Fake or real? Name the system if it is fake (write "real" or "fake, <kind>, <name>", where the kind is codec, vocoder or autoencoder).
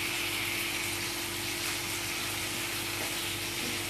real